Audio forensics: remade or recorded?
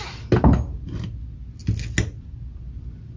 recorded